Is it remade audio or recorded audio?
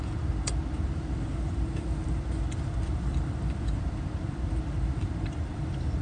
remade